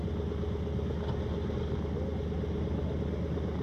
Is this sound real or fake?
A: real